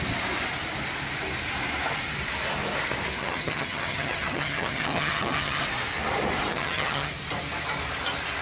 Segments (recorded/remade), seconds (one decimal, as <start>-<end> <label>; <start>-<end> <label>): 0.0-3.2 recorded; 3.2-5.6 remade; 5.6-6.5 recorded; 6.5-7.1 remade; 7.1-8.4 recorded